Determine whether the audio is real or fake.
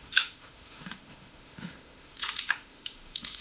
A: fake